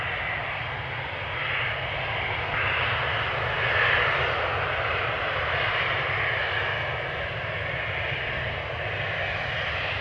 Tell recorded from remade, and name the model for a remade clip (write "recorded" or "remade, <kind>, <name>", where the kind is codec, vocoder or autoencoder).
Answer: recorded